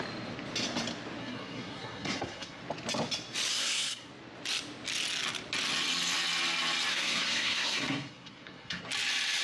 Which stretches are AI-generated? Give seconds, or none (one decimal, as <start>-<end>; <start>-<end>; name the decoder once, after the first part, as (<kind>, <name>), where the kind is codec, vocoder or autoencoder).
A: 1.2-2.6 (codec, SNAC); 3.5-4.1; 6.9-8.8